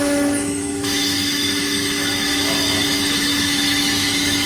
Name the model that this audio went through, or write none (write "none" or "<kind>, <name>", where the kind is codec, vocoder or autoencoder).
autoencoder, DAC-VAE